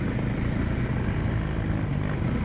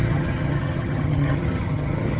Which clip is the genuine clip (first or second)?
first